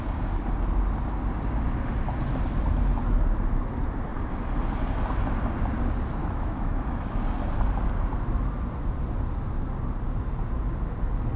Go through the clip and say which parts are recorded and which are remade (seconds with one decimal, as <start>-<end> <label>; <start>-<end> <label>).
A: 0.0-6.2 recorded; 6.2-7.2 remade; 7.2-11.4 recorded